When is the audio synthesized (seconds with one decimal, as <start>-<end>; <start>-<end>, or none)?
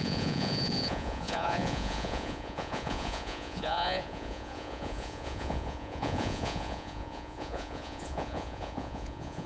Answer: 0.0-9.5